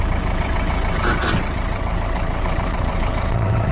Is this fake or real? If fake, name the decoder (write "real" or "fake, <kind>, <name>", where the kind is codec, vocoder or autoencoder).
fake, vocoder, WaveNeXt